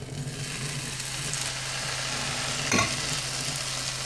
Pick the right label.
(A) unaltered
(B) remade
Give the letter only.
A